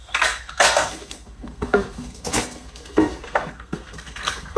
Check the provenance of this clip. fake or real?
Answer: fake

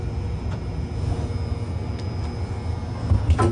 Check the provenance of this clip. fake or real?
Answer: real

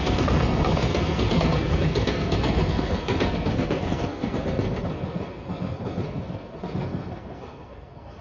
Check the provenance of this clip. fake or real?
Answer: fake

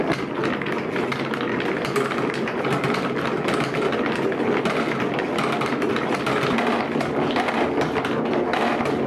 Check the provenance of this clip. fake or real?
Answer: real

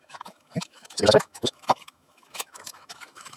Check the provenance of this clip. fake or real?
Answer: fake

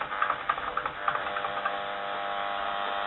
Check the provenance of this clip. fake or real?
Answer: real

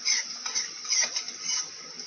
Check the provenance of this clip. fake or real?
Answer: real